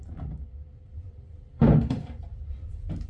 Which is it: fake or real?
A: fake